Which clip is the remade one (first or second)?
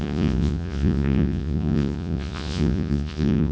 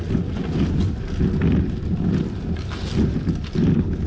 first